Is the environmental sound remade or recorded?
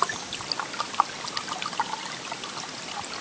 recorded